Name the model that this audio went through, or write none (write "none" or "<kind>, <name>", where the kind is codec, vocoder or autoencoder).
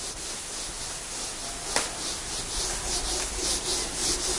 none